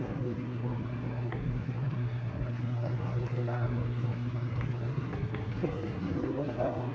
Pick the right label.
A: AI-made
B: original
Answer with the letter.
A